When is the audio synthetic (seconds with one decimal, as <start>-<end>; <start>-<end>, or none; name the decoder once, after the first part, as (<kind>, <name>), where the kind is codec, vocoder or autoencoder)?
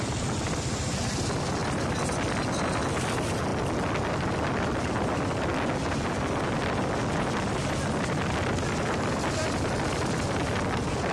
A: none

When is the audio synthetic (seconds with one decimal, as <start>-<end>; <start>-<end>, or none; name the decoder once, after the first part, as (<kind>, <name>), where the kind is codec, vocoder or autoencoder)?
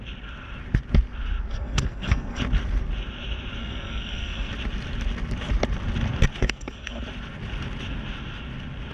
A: 1.5-2.4 (codec, SNAC); 3.6-4.5; 6.4-7.0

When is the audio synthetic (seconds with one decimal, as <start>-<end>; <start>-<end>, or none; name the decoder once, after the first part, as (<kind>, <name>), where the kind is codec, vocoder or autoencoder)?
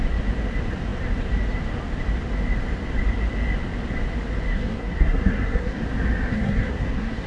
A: 4.5-5.8 (codec, SNAC); 6.3-7.3